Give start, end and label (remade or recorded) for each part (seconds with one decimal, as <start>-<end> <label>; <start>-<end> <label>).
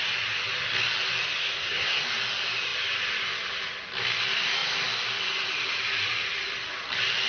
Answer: 0.0-1.4 recorded; 1.4-2.0 remade; 2.0-7.3 recorded